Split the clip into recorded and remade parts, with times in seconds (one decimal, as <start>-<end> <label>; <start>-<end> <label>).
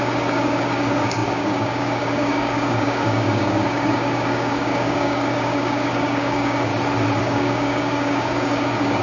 0.0-6.7 remade; 6.7-7.2 recorded; 7.2-9.0 remade